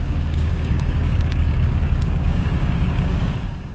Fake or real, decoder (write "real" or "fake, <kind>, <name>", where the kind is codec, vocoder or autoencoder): fake, codec, DAC